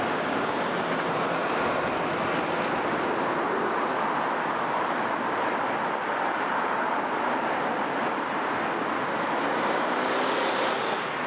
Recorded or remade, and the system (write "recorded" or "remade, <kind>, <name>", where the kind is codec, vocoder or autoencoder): recorded